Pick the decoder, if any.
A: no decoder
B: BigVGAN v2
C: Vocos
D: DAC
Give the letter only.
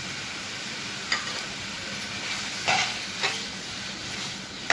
A